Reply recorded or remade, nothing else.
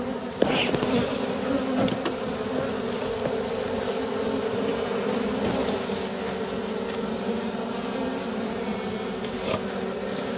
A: recorded